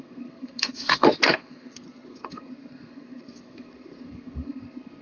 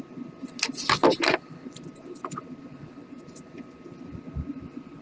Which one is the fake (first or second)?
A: first